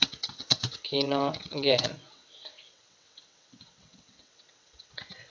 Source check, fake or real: fake